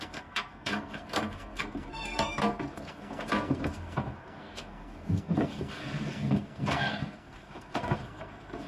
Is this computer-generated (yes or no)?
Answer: yes